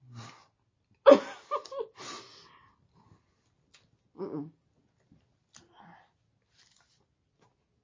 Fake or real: real